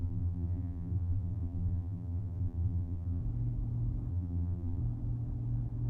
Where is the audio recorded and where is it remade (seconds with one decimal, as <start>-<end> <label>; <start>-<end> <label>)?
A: 0.0-3.2 remade; 3.2-4.1 recorded; 4.1-4.8 remade; 4.8-5.9 recorded